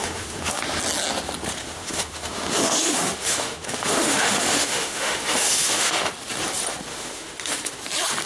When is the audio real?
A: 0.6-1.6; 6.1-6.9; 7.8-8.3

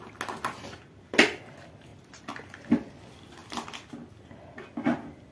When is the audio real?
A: 0.0-5.3

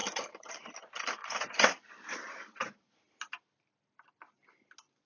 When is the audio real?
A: 0.5-1.2; 3.0-5.1